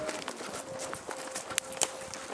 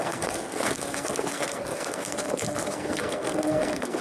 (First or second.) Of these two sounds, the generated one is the second